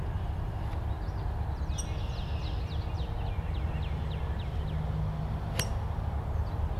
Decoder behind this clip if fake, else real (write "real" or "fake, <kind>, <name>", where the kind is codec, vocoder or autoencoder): real